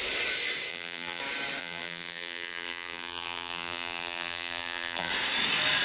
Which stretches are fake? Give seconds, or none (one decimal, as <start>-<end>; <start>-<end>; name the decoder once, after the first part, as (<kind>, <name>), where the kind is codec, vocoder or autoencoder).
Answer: 0.7-1.2 (vocoder, BigVGAN v2); 1.6-5.1